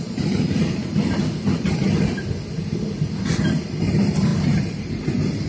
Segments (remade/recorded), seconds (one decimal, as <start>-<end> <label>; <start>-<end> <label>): 0.0-0.8 remade; 0.8-3.5 recorded; 3.5-5.5 remade